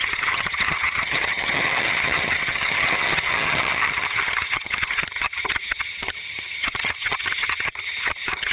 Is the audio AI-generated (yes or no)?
yes